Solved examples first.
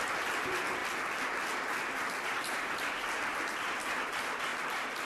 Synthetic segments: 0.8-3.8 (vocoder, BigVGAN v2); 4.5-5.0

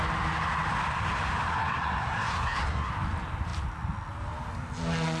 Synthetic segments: 1.5-2.9 (codec, SNAC)

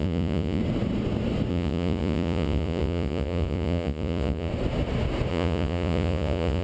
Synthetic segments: 0.0-0.6 (vocoder, Vocos); 1.5-4.5; 5.3-6.6

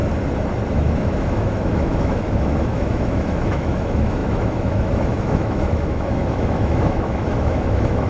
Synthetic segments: 0.7-8.1 (autoencoder, DAC-VAE)

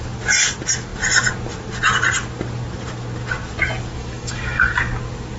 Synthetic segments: 4.0-4.7 (autoencoder, DAC-VAE)

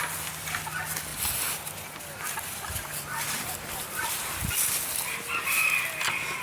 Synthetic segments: none